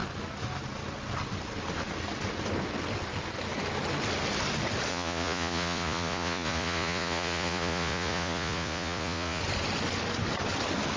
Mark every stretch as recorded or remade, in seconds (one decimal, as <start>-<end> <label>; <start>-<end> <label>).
0.0-4.9 recorded; 4.9-9.4 remade; 9.4-11.0 recorded